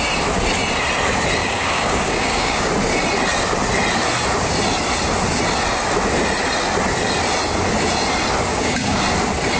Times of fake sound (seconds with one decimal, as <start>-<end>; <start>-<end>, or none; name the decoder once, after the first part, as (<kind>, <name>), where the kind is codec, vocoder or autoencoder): 1.4-2.7 (codec, DAC); 8.5-9.0